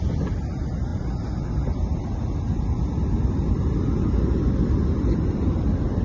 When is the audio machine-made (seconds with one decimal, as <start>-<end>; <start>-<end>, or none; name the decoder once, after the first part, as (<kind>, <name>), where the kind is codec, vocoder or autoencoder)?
none